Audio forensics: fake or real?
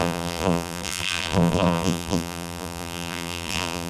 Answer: fake